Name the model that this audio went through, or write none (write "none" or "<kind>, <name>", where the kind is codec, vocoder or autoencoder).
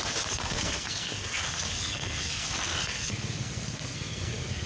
codec, SNAC